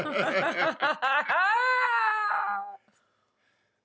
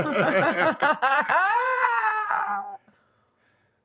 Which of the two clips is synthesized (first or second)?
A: second